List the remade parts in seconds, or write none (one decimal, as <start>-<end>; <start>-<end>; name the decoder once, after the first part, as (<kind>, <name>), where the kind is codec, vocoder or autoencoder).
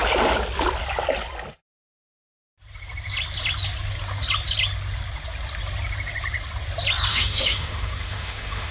7.1-8.7 (autoencoder, DAC-VAE)